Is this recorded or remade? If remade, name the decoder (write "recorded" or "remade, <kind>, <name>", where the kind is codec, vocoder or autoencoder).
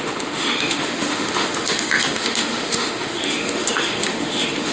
remade, autoencoder, DAC-VAE